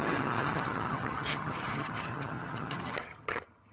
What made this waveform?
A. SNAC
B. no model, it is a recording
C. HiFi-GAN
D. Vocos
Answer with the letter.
C